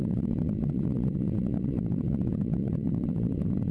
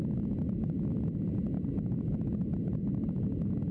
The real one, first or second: second